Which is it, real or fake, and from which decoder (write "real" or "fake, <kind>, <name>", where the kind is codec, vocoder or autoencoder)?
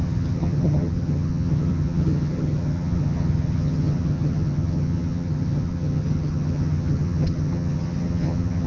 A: fake, vocoder, HiFi-GAN